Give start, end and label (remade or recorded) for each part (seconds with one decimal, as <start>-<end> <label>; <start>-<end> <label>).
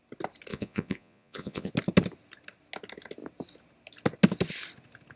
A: 0.0-0.5 recorded; 0.5-1.7 remade; 1.7-5.2 recorded